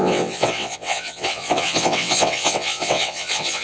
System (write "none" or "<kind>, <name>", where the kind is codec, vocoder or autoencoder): vocoder, WaveNeXt